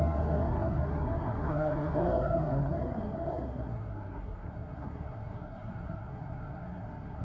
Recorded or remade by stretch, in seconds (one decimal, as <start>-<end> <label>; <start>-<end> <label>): 0.0-7.2 remade